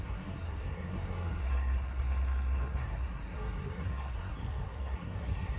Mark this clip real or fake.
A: fake